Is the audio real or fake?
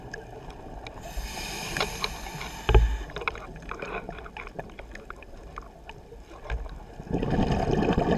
real